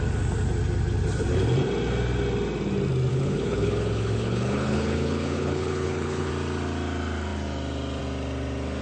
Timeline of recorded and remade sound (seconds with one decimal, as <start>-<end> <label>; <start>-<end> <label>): 0.0-3.1 recorded; 3.1-6.3 remade; 6.3-8.8 recorded